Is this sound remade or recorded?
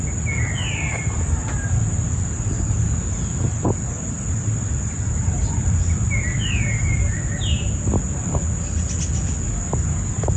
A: recorded